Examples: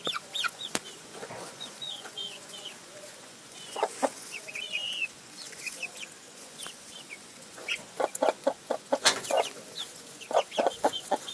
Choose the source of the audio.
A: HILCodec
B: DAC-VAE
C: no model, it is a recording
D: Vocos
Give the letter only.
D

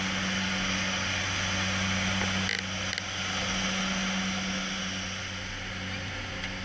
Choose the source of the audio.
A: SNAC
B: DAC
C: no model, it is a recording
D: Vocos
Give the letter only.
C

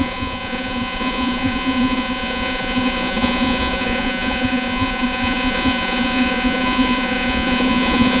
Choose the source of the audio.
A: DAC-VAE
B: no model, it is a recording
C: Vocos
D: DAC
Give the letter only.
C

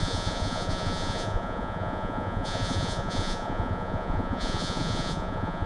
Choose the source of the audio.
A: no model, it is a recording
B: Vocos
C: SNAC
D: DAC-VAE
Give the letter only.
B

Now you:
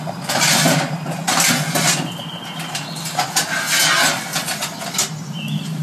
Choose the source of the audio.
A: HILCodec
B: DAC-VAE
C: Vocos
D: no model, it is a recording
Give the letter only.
D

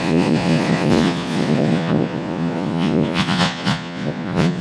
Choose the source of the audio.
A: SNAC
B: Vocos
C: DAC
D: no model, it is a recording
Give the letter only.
B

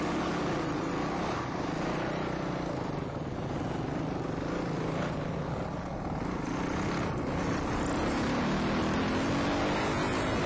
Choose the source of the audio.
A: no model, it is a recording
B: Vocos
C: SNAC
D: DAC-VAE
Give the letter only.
A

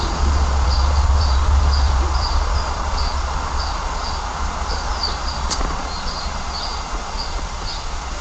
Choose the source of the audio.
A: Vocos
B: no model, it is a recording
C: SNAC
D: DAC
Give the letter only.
A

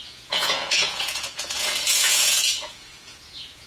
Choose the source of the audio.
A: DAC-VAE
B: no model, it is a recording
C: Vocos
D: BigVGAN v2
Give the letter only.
C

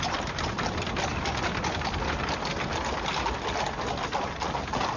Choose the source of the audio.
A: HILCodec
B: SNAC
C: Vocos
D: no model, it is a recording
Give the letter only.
D